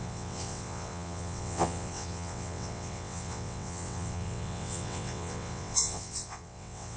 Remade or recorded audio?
remade